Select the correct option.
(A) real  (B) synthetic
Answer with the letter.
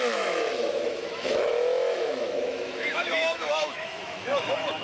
B